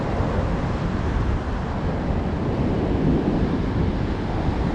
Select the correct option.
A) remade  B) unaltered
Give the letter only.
B